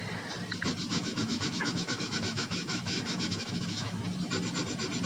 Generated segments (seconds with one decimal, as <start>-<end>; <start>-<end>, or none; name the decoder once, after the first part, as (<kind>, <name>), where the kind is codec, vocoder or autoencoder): 0.9-4.0 (autoencoder, DAC-VAE)